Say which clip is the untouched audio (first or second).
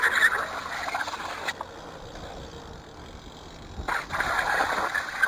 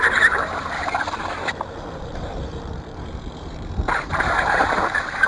first